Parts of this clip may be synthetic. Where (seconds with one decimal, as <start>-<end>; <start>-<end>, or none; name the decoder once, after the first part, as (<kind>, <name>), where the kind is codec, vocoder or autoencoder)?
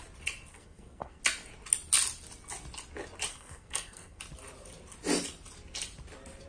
0.5-1.2 (codec, SNAC); 3.3-4.2